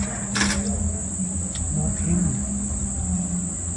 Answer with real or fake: real